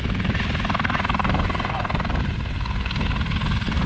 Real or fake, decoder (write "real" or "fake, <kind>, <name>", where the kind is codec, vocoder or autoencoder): real